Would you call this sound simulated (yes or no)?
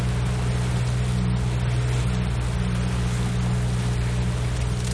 no